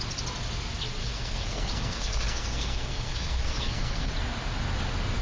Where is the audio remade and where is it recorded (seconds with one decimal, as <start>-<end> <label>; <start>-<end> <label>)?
0.0-1.0 recorded; 1.0-4.1 remade; 4.1-5.2 recorded

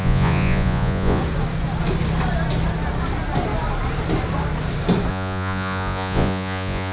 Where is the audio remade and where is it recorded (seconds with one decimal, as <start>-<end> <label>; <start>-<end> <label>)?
0.0-1.2 remade; 1.2-5.1 recorded; 5.1-6.9 remade

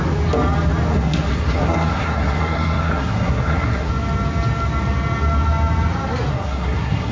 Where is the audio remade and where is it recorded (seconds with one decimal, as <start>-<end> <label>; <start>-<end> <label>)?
0.0-0.9 recorded; 0.9-3.9 remade; 3.9-6.3 recorded; 6.3-7.1 remade

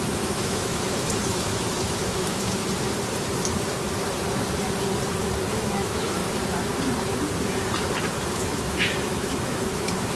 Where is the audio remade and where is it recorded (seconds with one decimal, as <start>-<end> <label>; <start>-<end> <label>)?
0.0-2.6 remade; 2.6-5.5 recorded; 5.5-6.2 remade; 6.2-8.0 recorded; 8.0-10.2 remade

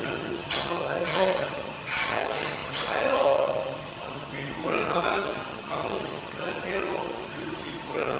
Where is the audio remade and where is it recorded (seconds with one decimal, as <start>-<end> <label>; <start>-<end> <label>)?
0.0-8.2 remade